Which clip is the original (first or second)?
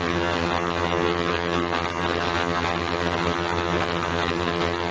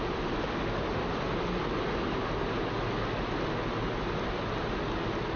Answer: second